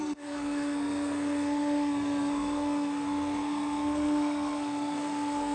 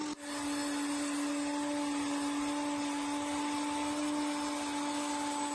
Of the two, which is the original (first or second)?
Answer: second